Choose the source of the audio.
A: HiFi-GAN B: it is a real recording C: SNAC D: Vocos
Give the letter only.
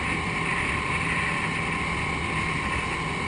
B